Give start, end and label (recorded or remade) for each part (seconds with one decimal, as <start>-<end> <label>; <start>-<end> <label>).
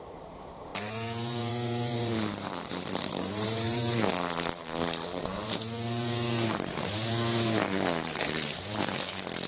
0.0-4.1 remade; 4.1-5.2 recorded; 5.2-9.5 remade